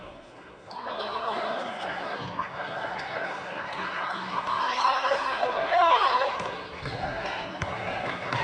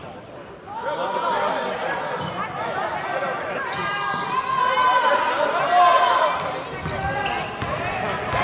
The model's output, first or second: first